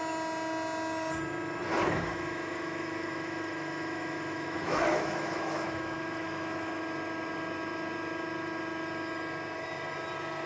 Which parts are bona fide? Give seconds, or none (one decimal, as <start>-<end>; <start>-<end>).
0.0-1.7; 6.8-10.5